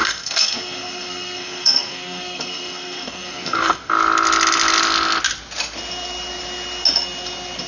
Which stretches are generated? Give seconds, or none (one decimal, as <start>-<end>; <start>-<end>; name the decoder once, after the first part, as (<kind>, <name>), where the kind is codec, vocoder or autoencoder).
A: 0.0-3.9 (codec, SNAC)